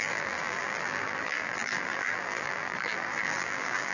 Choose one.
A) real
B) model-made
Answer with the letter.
B